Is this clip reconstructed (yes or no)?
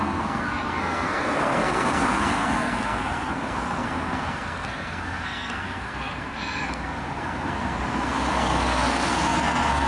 yes